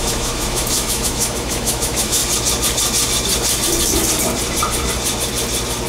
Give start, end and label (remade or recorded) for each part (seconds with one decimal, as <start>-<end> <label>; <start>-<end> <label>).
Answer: 0.0-2.2 remade; 2.2-5.9 recorded